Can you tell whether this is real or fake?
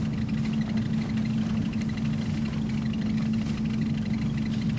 real